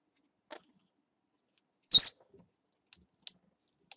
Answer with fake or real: real